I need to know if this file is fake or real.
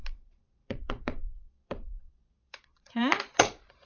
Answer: fake